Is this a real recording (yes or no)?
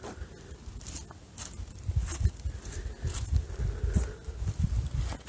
yes